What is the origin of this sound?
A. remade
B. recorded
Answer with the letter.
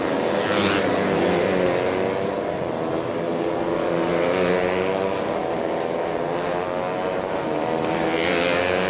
B